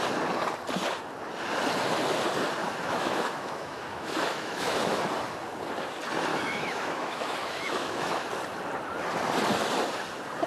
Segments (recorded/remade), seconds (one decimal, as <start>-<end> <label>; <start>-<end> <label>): 0.0-2.6 recorded; 2.6-5.0 remade; 5.0-6.3 recorded; 6.3-8.3 remade; 8.3-10.5 recorded